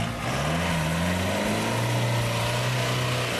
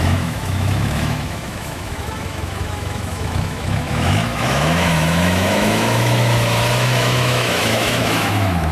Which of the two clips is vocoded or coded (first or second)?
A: second